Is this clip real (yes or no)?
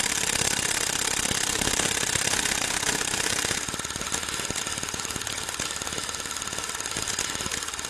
yes